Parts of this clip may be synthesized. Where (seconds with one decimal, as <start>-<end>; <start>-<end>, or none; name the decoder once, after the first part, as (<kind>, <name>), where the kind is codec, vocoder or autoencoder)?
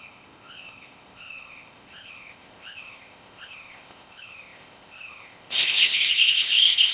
0.0-6.9 (codec, ZipCodec)